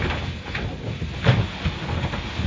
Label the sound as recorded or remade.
recorded